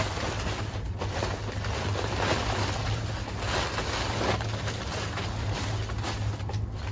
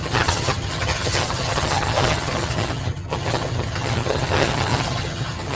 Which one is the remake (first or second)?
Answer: second